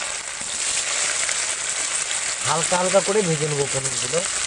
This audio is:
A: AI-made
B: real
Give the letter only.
B